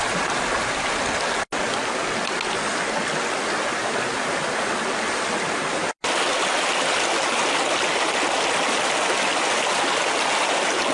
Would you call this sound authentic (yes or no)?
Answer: yes